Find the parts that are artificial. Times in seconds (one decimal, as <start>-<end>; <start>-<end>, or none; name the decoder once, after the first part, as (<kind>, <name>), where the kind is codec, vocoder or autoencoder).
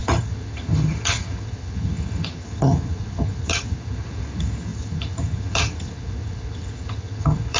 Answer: 0.0-7.6 (vocoder, HiFi-GAN)